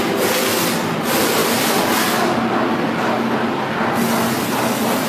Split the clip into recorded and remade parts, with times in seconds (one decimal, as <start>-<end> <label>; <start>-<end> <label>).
0.0-5.1 recorded